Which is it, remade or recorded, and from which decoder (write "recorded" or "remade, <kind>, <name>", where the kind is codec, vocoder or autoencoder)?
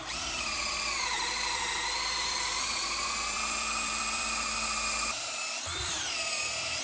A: remade, vocoder, BigVGAN v2